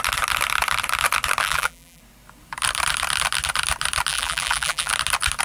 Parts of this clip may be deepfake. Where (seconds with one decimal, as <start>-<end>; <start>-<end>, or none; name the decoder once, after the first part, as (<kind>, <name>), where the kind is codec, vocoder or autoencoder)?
1.4-2.0 (vocoder, BigVGAN v2); 4.1-4.9